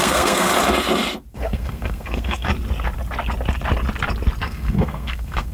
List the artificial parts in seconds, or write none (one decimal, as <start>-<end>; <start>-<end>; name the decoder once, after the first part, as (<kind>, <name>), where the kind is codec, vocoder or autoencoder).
0.0-0.5 (codec, SNAC); 1.3-2.5; 4.4-5.5